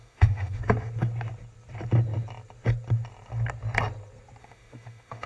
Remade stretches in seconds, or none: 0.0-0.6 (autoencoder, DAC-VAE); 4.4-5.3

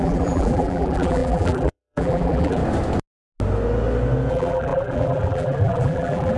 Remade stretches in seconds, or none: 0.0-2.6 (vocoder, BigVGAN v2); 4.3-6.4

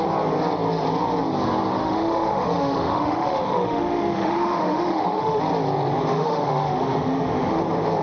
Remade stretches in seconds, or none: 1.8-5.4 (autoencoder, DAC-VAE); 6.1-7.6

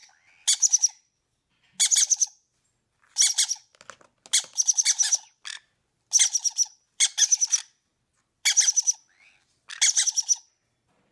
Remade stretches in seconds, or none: none